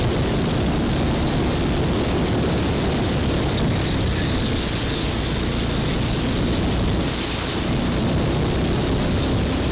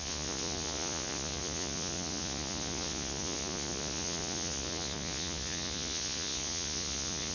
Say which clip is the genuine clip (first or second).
first